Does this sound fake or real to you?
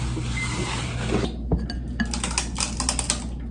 real